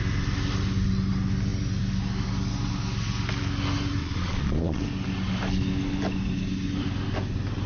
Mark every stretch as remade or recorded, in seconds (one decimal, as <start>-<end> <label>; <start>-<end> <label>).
0.0-4.0 recorded; 4.0-4.8 remade; 4.8-7.7 recorded